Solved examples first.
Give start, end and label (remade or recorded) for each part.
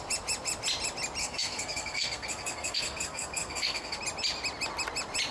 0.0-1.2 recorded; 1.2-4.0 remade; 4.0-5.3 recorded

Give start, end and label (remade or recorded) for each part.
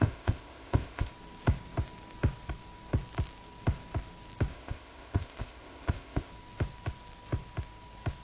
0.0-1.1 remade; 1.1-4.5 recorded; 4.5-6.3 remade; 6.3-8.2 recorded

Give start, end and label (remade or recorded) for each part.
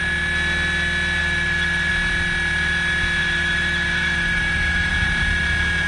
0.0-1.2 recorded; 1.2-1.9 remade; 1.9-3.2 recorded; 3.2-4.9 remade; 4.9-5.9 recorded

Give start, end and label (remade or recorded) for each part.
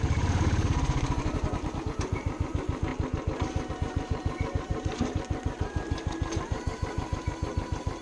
0.0-2.9 remade; 2.9-3.7 recorded; 3.7-8.0 remade